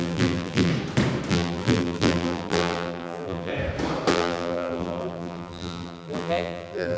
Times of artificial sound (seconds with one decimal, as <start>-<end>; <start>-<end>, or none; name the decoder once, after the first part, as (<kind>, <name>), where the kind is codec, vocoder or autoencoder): 0.0-0.7 (vocoder, BigVGAN v2); 1.3-3.5; 4.1-7.0